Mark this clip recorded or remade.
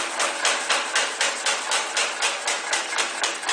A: recorded